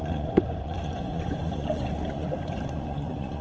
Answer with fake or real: fake